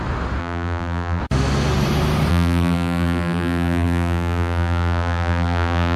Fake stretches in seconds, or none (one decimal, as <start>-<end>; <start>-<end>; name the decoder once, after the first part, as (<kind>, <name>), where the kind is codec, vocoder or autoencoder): 0.4-1.2 (vocoder, BigVGAN v2); 2.3-6.0